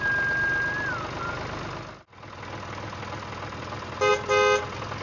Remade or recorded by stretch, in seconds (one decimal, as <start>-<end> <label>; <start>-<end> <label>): 0.0-5.0 recorded